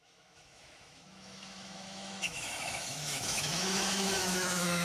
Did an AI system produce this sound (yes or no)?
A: yes